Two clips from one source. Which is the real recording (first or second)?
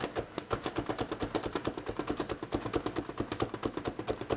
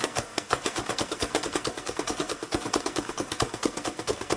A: first